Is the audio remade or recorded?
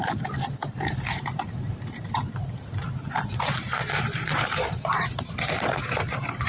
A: remade